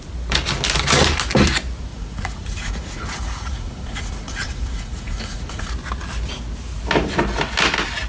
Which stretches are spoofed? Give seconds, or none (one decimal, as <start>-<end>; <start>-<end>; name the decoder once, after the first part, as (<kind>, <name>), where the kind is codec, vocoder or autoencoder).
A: 1.9-5.7 (vocoder, Vocos)

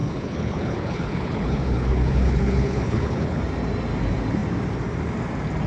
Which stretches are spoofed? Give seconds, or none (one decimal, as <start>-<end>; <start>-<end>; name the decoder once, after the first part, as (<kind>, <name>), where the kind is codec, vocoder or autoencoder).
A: 0.0-3.4 (codec, HILCodec)

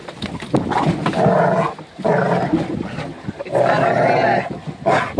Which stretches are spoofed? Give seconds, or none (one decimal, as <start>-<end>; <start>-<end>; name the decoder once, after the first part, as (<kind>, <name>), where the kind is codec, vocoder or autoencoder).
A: none

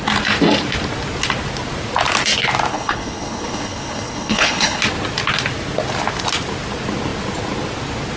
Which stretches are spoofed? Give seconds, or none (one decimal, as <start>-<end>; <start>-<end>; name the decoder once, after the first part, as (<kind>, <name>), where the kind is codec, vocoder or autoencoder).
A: 2.7-4.8 (codec, HILCodec)

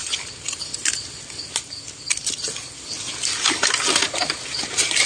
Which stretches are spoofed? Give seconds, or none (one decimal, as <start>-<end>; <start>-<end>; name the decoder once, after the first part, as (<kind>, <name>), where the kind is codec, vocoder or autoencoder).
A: none

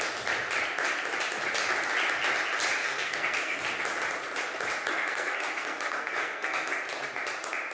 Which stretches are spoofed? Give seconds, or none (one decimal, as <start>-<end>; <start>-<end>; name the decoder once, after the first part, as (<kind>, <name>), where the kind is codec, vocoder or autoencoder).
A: 2.8-3.6 (codec, SNAC); 4.9-6.7